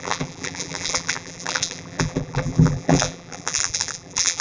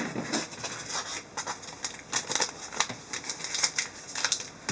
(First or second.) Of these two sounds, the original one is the second